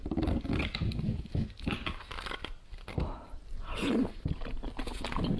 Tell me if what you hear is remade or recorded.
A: recorded